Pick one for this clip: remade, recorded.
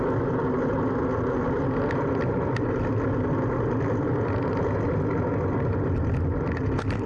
recorded